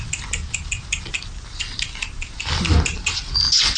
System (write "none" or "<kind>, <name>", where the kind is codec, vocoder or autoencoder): none